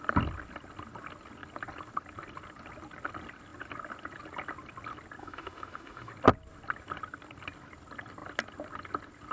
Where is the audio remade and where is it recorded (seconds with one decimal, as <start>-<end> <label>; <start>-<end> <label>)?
0.0-5.2 recorded; 5.2-6.1 remade; 6.1-9.3 recorded